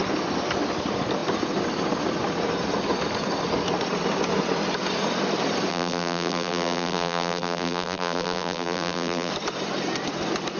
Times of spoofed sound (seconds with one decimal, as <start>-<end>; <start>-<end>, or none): 5.7-9.3